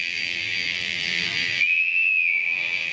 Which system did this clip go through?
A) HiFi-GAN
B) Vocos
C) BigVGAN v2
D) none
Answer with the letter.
C